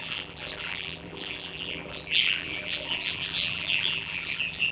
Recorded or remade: remade